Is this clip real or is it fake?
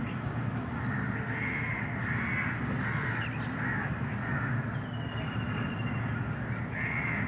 real